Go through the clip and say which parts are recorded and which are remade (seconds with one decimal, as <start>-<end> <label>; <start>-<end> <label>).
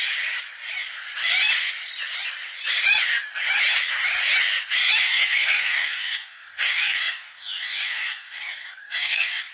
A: 0.0-5.0 recorded; 5.0-9.5 remade